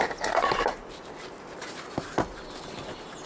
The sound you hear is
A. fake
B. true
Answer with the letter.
B